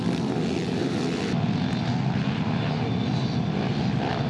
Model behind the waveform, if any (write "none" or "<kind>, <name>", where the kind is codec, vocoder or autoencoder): none